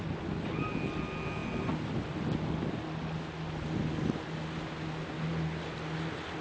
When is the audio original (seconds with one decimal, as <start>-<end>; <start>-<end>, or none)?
0.0-6.4